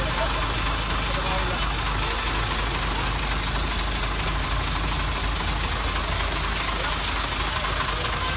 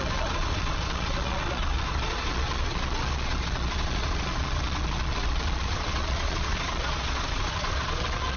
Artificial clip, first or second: second